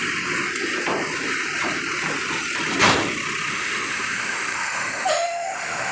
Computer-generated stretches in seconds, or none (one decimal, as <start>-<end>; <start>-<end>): 3.5-5.9